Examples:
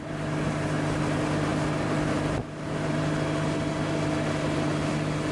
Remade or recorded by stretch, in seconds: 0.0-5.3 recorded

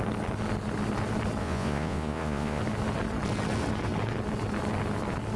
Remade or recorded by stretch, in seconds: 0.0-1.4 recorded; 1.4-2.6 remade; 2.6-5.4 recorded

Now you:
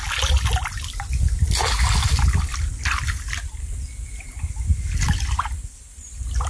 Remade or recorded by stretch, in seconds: 0.0-6.5 recorded

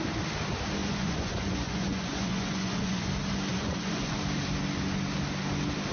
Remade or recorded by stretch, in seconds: 0.0-0.8 recorded; 0.8-3.1 remade; 3.1-3.5 recorded; 3.5-4.2 remade; 4.2-5.9 recorded

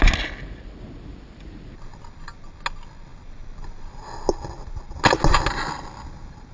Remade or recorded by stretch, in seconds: 0.0-6.5 recorded

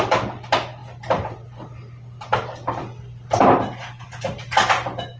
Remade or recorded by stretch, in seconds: 0.0-5.2 recorded